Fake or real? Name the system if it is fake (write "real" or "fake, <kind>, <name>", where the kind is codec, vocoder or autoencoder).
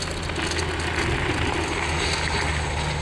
real